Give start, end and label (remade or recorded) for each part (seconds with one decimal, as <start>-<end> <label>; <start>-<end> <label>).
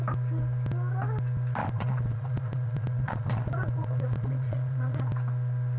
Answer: 0.0-1.6 recorded; 1.6-5.1 remade; 5.1-5.8 recorded